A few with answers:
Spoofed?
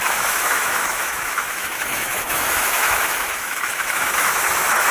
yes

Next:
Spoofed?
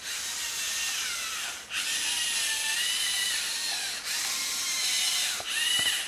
no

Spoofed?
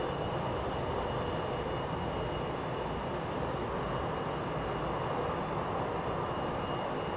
no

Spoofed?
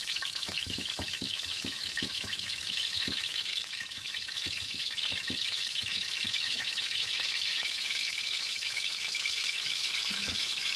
yes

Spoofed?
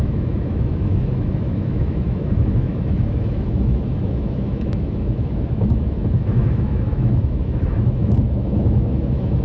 yes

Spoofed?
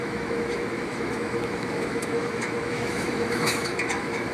yes